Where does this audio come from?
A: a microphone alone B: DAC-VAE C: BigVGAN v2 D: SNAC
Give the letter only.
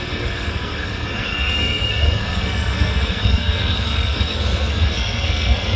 D